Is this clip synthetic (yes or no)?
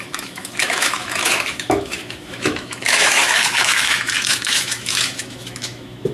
yes